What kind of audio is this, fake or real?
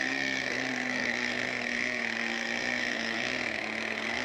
fake